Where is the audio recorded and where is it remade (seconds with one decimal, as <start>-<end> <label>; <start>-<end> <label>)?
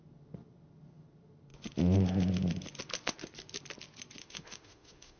0.0-4.2 recorded; 4.2-5.2 remade